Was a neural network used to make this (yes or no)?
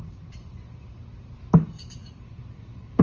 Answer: yes